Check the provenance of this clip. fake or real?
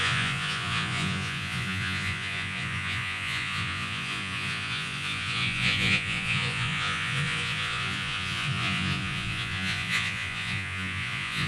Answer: fake